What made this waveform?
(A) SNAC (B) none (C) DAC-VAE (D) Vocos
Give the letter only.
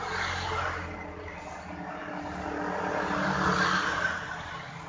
B